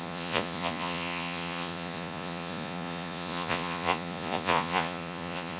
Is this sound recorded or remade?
remade